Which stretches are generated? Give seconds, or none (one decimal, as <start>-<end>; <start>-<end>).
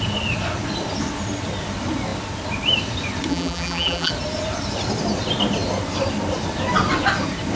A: 3.3-4.1